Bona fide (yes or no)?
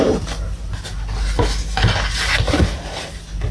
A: yes